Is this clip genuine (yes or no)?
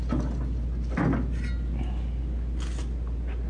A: yes